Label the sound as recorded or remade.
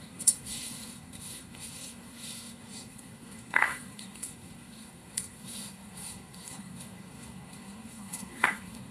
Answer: remade